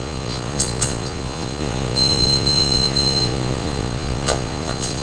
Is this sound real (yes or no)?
no